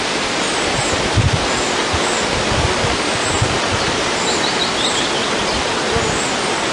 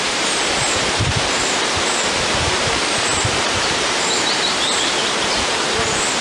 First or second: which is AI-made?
second